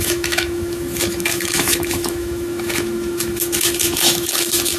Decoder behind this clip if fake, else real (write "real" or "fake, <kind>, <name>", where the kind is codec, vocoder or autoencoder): fake, autoencoder, DAC-VAE